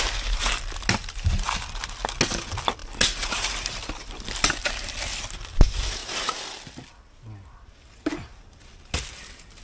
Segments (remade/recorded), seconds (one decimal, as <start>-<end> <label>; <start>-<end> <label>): 0.0-9.6 recorded